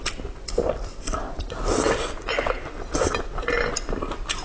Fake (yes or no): no